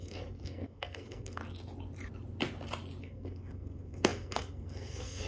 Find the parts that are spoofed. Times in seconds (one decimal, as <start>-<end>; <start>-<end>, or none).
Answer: 0.0-1.4; 3.0-5.3